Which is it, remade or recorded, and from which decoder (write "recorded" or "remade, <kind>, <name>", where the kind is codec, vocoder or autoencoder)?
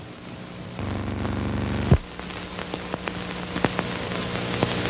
recorded